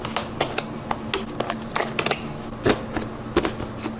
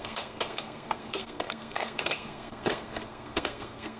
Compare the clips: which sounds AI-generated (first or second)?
second